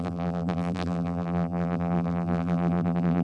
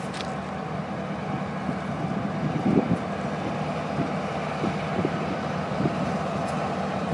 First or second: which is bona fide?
second